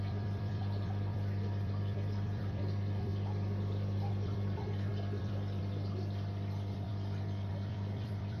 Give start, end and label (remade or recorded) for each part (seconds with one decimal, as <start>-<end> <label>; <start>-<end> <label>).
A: 0.0-3.1 remade; 3.1-4.1 recorded; 4.1-8.4 remade